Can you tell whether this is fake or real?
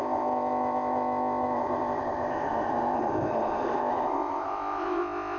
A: fake